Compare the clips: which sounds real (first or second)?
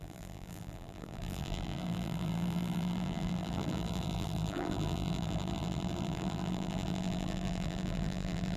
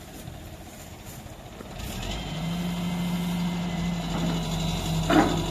second